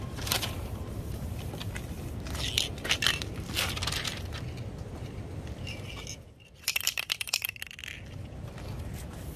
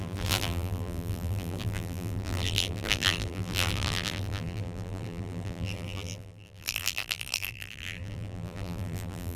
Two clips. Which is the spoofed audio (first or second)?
second